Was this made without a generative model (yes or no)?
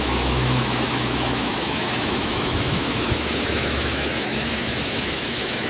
no